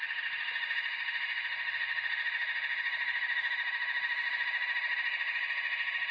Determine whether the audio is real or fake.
real